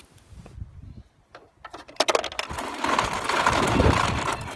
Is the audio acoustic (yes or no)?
yes